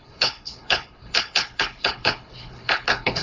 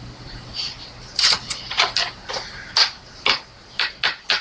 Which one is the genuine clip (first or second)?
second